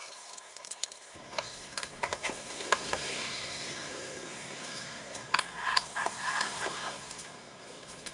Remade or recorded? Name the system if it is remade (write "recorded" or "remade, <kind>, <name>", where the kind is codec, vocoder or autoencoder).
remade, codec, SNAC